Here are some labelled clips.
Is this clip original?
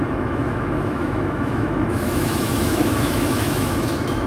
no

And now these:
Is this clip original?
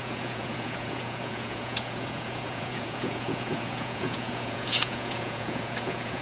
no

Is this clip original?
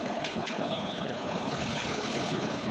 no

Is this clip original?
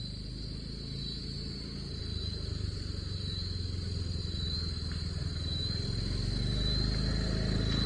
yes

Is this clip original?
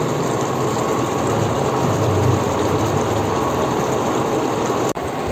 no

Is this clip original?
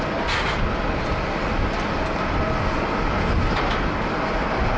yes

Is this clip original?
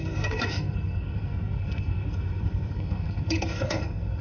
no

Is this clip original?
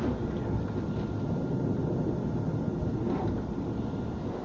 yes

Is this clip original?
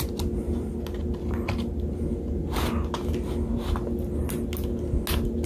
yes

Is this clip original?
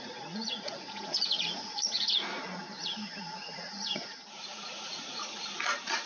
no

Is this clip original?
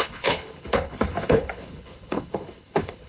no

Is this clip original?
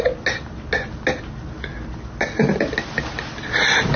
yes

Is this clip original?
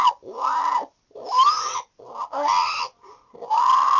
yes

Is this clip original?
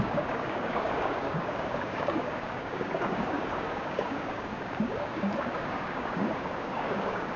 no